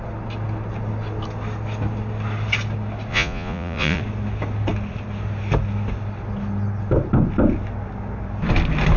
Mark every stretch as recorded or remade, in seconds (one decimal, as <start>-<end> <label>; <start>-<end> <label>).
0.0-3.1 recorded; 3.1-4.0 remade; 4.0-9.0 recorded